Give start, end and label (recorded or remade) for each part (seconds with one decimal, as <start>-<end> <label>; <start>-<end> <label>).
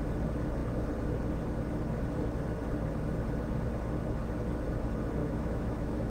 0.0-5.2 recorded; 5.2-6.1 remade